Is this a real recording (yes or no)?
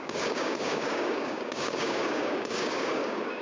no